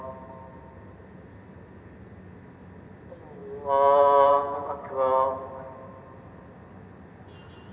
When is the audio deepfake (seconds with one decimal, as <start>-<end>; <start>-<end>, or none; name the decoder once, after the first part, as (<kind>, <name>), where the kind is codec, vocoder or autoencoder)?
none